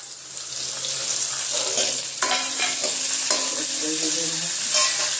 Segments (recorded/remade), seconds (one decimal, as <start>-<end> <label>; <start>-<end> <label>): 0.0-5.2 recorded